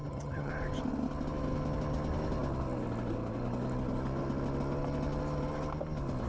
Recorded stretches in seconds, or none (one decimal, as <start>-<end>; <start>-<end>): 0.5-6.3